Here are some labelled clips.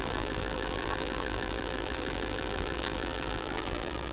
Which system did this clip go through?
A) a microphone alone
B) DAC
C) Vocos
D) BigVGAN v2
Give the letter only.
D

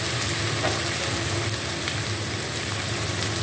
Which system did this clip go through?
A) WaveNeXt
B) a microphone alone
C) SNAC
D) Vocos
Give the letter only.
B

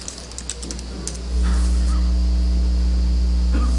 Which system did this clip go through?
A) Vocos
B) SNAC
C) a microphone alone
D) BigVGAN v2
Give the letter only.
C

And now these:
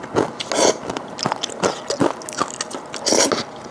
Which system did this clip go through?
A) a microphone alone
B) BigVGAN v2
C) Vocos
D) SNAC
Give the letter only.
A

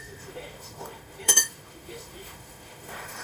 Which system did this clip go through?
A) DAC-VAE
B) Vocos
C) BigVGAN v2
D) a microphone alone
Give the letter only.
A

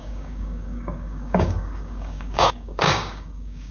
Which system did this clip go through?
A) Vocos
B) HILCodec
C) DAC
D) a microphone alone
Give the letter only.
C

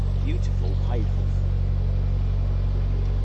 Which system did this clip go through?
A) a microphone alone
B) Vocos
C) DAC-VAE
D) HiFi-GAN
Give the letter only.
A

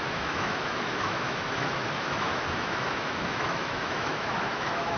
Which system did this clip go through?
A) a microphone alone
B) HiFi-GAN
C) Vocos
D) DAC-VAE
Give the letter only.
D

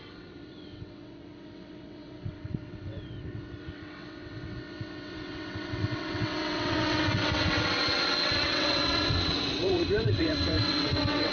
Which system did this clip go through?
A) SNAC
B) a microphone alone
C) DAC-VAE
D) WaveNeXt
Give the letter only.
D